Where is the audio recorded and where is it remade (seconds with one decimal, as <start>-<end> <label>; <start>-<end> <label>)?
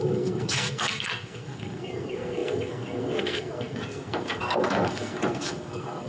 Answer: 0.0-6.1 remade